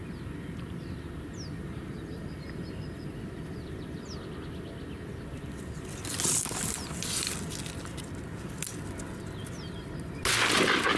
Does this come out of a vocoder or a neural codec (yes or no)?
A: no